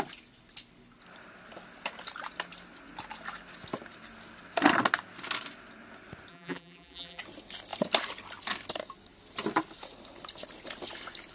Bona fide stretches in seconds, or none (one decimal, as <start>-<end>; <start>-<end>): 0.0-6.3; 7.2-11.3